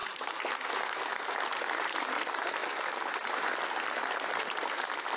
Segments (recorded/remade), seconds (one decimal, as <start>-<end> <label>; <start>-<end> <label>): 0.0-5.2 recorded